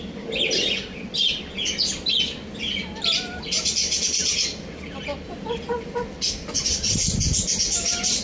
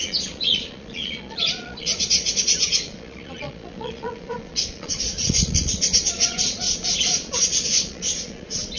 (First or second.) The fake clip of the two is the second